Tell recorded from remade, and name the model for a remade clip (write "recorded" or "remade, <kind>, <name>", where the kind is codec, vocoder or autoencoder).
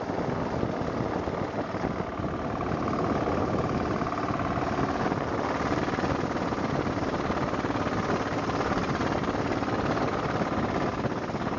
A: recorded